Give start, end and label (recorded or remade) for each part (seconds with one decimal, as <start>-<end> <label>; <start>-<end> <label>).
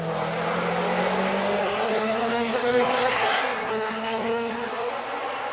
0.0-1.6 recorded; 1.6-4.9 remade; 4.9-5.5 recorded